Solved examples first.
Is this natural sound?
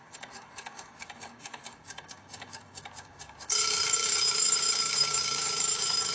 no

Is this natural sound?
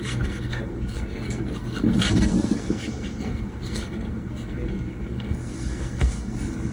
no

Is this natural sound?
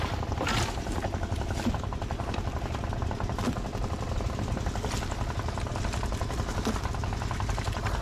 yes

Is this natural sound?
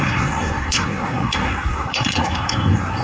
no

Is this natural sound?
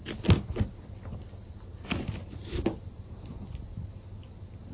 yes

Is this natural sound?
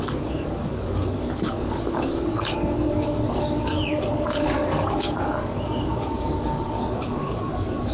no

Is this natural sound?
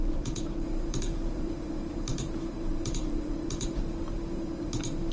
no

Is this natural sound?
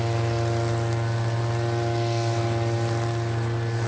yes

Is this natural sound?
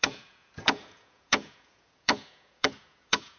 no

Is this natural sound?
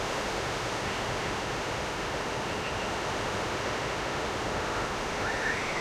no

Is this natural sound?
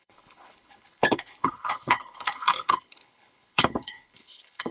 no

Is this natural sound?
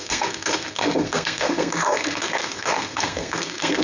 no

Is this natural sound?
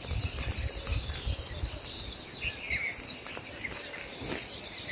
yes